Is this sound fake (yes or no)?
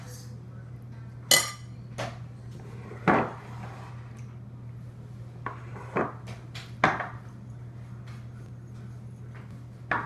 no